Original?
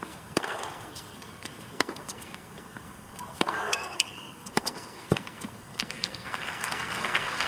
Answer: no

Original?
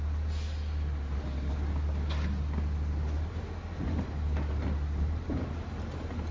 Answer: yes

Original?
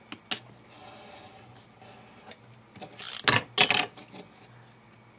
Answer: yes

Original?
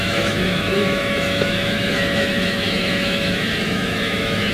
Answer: no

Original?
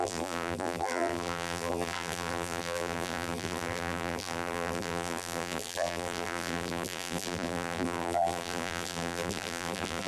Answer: no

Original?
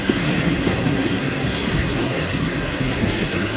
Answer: no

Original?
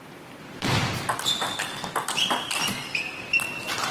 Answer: yes